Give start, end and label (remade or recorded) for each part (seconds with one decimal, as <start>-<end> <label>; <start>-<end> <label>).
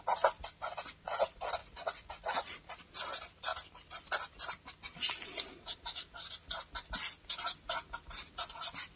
0.0-1.6 recorded; 1.6-2.8 remade; 2.8-9.0 recorded